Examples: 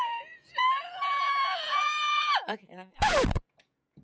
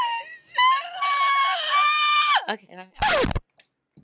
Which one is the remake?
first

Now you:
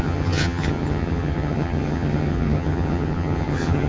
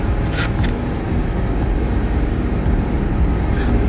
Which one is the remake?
first